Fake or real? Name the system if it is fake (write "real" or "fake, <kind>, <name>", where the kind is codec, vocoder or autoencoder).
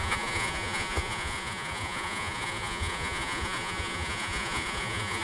fake, vocoder, Vocos